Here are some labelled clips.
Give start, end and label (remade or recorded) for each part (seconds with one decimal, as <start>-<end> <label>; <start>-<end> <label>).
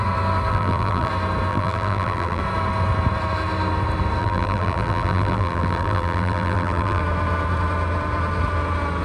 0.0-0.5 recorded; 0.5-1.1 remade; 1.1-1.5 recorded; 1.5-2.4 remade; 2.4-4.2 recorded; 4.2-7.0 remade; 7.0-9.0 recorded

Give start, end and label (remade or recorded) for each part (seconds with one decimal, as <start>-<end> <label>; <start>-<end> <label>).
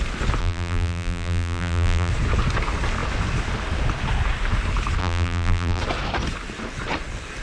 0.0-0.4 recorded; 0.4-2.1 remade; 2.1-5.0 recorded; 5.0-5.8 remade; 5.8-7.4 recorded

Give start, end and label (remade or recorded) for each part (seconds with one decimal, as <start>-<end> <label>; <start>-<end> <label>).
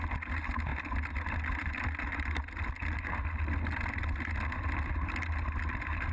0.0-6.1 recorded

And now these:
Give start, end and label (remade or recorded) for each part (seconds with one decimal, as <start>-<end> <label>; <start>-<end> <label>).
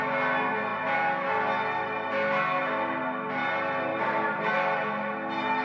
0.0-3.9 recorded; 3.9-4.5 remade; 4.5-5.6 recorded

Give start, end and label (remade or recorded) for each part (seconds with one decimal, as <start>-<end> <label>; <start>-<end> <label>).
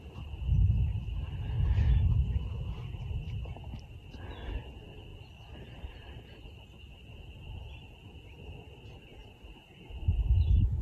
0.0-5.1 recorded; 5.1-6.8 remade; 6.8-10.8 recorded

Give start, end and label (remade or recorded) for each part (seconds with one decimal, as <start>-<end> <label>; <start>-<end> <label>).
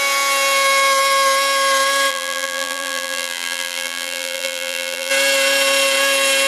0.0-2.1 recorded; 2.1-5.1 remade; 5.1-6.5 recorded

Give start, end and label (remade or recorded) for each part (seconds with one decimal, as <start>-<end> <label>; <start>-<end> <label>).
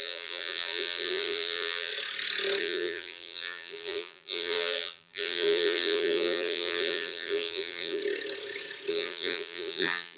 0.0-1.9 remade; 1.9-2.6 recorded; 2.6-8.0 remade; 8.0-8.9 recorded; 8.9-10.2 remade